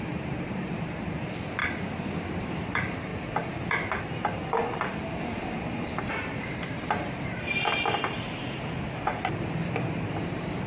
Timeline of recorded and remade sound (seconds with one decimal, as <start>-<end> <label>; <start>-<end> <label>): 0.0-1.6 remade; 1.6-2.4 recorded; 2.4-10.7 remade